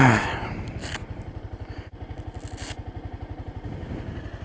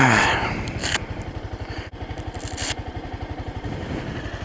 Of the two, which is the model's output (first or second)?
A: second